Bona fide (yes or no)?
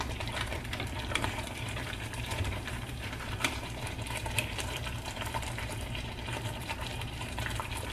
no